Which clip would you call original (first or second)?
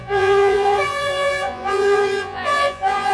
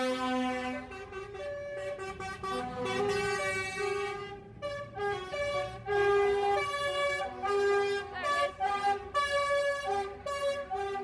second